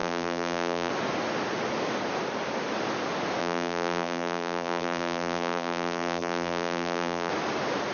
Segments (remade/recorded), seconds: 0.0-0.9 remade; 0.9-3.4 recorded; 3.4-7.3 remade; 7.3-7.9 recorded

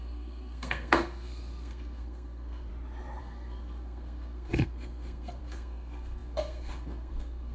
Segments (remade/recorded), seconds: 0.0-2.7 remade; 2.7-3.2 recorded; 3.2-7.5 remade

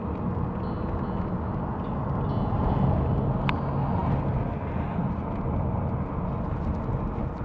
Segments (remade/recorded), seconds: 0.0-7.4 recorded